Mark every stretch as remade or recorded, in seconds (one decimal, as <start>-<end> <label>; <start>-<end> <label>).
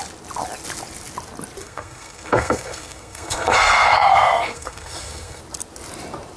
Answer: 0.0-1.6 recorded; 1.6-5.4 remade; 5.4-6.4 recorded